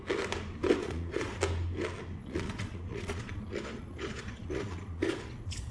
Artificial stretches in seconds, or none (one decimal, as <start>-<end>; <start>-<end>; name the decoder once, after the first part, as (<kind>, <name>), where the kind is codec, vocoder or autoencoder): 0.8-1.4 (vocoder, Vocos); 2.2-5.7